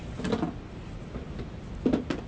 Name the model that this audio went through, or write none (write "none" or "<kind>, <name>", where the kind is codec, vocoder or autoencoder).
none